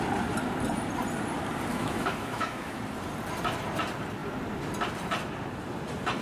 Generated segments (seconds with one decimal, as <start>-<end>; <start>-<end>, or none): 1.7-2.8